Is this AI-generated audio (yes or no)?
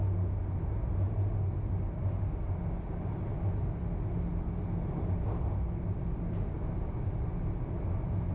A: no